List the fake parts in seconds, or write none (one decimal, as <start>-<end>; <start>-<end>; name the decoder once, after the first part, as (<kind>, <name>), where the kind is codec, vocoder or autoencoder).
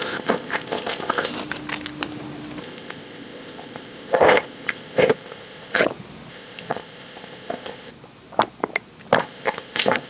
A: 0.0-1.3 (codec, ZipCodec); 2.6-5.8; 6.3-7.9; 9.2-10.1